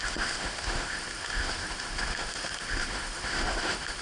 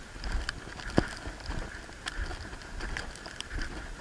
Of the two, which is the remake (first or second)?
first